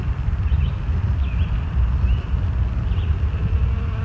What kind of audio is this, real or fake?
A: real